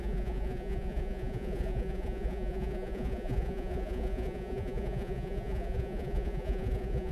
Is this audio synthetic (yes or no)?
yes